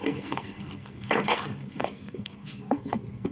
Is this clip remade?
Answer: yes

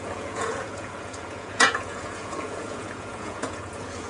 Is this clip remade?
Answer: yes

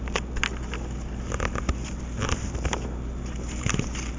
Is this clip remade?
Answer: no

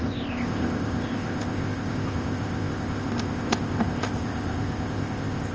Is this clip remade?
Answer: yes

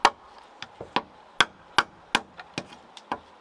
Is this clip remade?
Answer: no